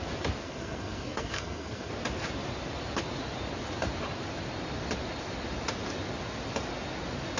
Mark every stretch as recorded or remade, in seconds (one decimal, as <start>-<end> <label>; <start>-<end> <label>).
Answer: 0.0-0.4 recorded; 0.4-1.9 remade; 1.9-7.4 recorded